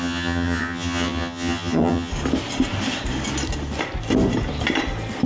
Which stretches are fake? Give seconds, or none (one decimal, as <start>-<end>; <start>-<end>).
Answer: 0.0-2.1